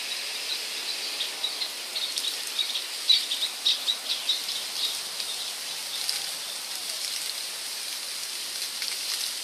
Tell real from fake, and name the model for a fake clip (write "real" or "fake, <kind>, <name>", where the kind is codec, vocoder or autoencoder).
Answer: real